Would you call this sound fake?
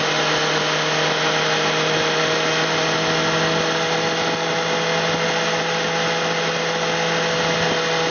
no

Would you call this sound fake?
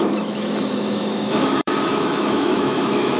yes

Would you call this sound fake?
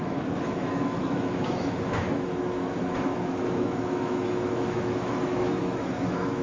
yes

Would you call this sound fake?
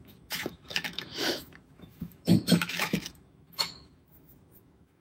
yes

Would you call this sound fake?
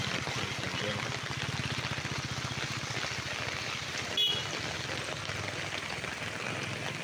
no